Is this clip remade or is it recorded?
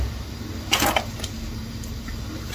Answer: recorded